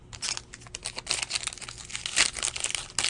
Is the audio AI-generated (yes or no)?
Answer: no